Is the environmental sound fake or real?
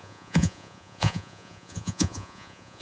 fake